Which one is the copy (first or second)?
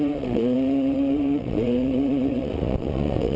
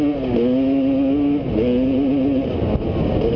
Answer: first